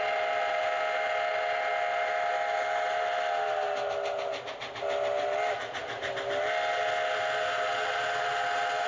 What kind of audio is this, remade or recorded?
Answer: recorded